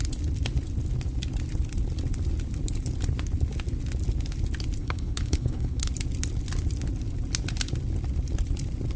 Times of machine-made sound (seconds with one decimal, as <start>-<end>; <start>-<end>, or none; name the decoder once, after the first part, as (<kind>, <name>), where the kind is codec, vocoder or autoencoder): 4.8-5.9 (codec, HILCodec)